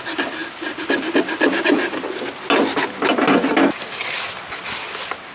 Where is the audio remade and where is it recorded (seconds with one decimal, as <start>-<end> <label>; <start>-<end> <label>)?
0.0-5.3 recorded